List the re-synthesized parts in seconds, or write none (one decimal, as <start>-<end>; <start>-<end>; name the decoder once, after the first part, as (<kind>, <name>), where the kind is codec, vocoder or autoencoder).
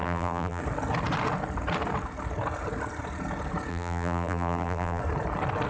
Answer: 0.0-0.6 (vocoder, BigVGAN v2); 3.7-5.0